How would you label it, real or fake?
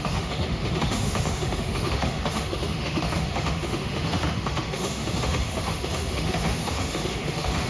fake